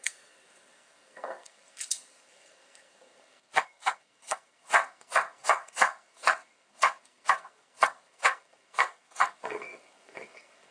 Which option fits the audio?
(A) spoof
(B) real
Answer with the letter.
A